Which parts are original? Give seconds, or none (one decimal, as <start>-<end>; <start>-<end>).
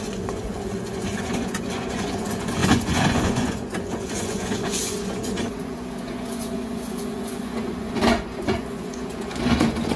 none